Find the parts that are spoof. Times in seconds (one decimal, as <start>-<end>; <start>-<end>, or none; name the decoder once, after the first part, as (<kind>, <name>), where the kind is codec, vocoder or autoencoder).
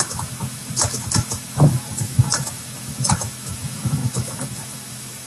0.0-5.3 (autoencoder, DAC-VAE)